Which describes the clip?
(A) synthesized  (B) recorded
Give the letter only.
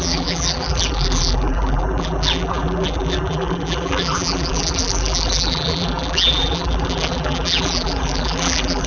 A